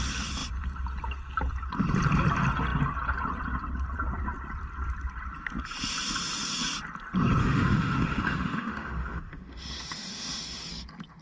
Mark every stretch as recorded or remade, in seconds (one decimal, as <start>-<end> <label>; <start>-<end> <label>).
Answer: 0.0-7.4 recorded; 7.4-10.7 remade; 10.7-11.2 recorded